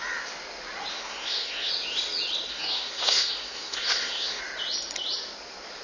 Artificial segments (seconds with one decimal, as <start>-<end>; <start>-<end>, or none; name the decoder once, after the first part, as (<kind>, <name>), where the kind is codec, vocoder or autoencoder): 0.9-1.7 (codec, SNAC); 2.5-4.4